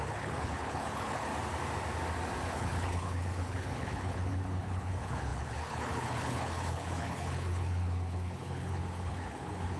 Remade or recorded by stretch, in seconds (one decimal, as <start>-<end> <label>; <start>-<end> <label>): 0.0-1.3 remade; 1.3-2.5 recorded; 2.5-9.8 remade